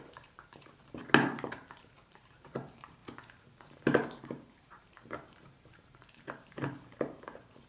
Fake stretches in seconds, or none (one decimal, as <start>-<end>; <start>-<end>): 0.0-1.0; 2.0-3.0; 3.6-7.7